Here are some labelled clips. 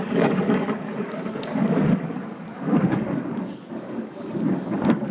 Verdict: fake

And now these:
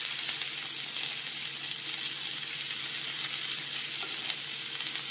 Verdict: real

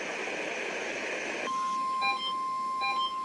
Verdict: real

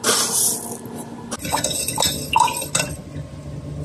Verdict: real